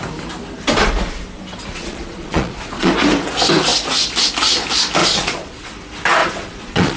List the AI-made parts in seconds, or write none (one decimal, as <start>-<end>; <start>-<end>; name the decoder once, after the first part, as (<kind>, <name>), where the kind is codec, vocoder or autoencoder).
1.7-2.9 (vocoder, Vocos); 5.0-5.7; 6.2-7.0